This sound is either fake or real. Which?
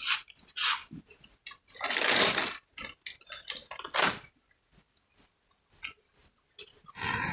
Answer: real